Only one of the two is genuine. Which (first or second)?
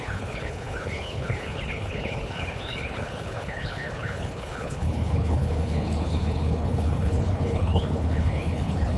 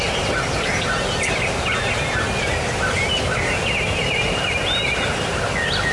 second